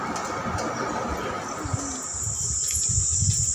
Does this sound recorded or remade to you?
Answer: recorded